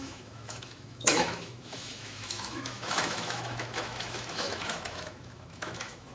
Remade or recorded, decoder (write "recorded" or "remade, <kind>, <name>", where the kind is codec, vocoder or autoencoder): remade, autoencoder, DAC-VAE